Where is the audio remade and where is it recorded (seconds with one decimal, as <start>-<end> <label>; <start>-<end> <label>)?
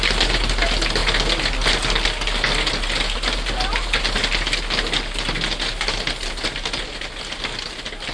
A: 0.0-8.1 recorded